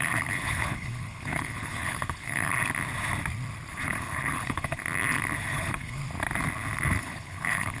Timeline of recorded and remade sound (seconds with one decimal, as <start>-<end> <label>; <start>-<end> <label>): 0.0-2.5 remade; 2.5-3.7 recorded; 3.7-4.8 remade; 4.8-5.4 recorded; 5.4-6.0 remade; 6.0-7.0 recorded; 7.0-7.8 remade